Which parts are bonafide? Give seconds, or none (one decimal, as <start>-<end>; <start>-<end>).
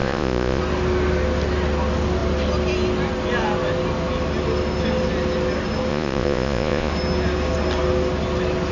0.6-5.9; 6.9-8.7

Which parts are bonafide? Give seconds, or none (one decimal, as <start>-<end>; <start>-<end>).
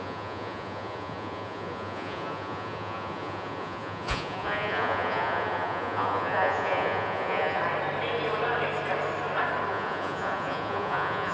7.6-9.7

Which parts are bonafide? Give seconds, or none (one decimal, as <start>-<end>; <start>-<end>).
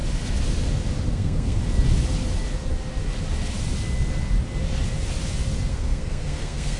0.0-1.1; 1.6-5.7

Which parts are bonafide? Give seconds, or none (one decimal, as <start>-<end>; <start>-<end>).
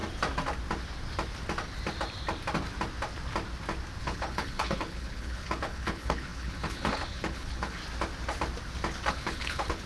0.0-4.0; 7.8-9.1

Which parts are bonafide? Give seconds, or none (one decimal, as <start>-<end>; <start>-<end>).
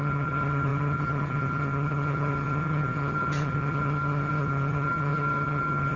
none